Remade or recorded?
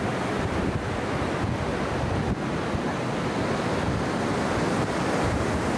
recorded